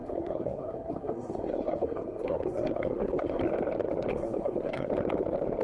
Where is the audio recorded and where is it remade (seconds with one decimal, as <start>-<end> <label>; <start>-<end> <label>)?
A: 0.0-3.4 remade; 3.4-4.1 recorded; 4.1-4.9 remade; 4.9-5.6 recorded

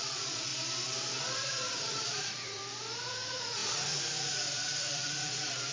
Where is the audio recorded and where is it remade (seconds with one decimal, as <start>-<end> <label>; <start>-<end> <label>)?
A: 0.0-0.5 remade; 0.5-1.2 recorded; 1.2-2.6 remade; 2.6-3.1 recorded; 3.1-5.7 remade